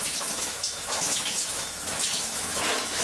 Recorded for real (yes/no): no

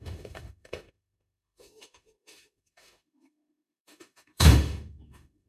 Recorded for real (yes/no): no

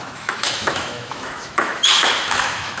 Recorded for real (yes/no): no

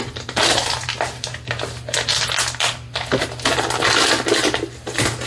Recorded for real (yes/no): yes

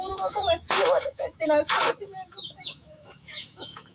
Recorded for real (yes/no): no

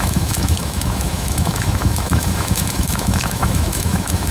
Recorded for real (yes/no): no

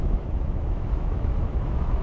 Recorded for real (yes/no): no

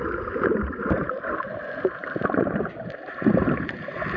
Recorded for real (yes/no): yes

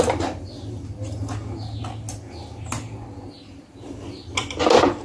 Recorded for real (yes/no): yes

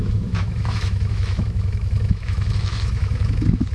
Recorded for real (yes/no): no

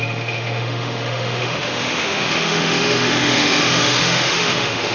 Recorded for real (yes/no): no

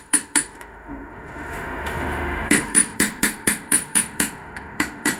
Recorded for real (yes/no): no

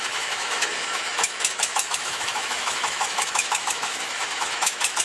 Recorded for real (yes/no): no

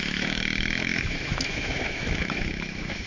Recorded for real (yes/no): no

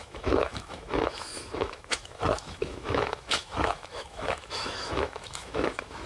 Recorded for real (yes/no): no